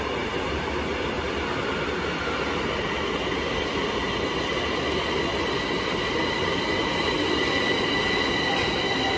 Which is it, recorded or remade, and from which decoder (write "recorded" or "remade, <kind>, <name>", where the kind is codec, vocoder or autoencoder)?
recorded